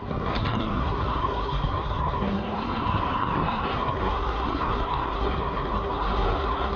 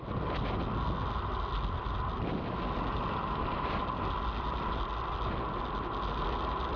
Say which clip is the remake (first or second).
first